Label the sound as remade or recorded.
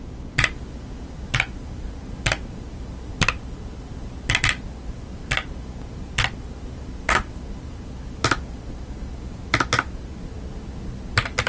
recorded